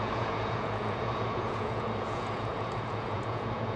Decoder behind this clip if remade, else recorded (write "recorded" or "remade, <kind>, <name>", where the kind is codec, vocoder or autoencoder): remade, vocoder, Vocos